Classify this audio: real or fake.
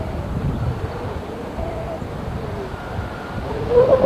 real